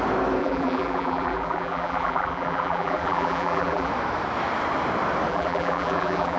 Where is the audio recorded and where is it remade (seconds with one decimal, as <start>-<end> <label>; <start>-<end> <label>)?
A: 0.0-0.4 recorded; 0.4-3.9 remade; 3.9-5.3 recorded; 5.3-6.4 remade